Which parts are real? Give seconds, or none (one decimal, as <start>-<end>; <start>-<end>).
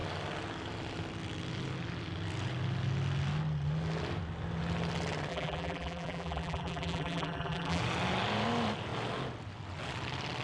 0.0-5.3; 7.8-10.4